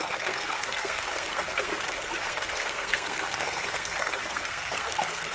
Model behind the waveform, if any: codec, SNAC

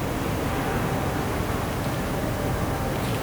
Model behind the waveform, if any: none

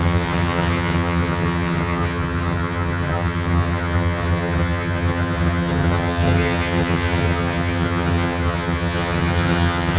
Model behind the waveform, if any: vocoder, HiFi-GAN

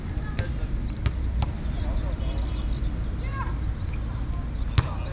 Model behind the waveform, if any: none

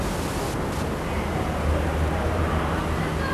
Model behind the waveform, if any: none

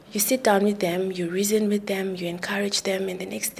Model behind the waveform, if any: none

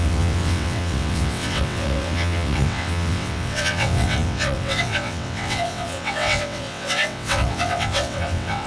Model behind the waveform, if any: vocoder, WaveNeXt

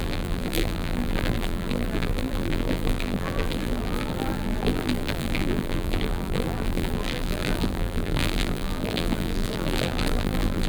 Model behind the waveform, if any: vocoder, BigVGAN v2